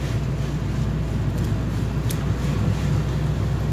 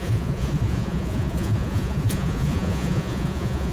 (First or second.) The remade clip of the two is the second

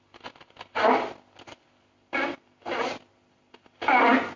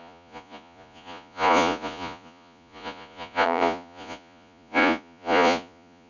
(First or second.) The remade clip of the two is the second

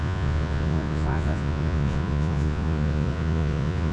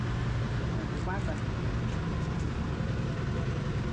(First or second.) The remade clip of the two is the first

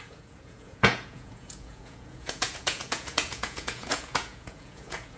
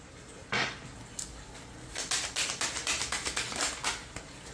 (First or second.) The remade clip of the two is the first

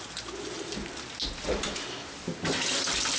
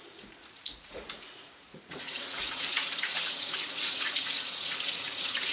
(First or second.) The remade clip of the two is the second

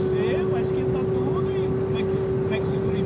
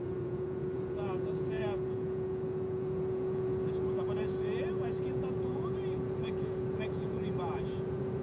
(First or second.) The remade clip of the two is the second